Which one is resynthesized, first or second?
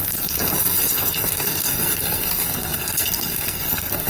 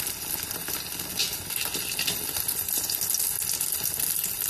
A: first